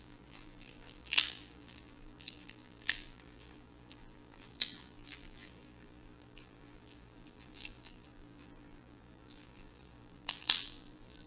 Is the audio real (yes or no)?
no